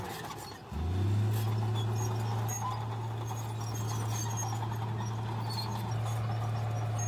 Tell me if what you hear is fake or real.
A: real